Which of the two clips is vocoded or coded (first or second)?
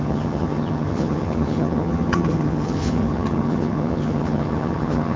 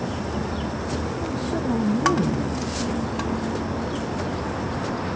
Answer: first